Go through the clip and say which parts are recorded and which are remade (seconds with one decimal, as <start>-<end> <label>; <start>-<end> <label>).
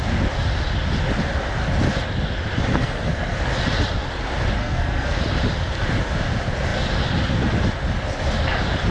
0.0-2.7 recorded; 2.7-3.4 remade; 3.4-4.6 recorded; 4.6-5.2 remade; 5.2-8.9 recorded